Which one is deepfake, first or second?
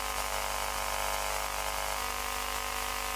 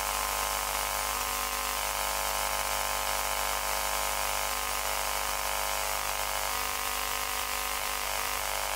second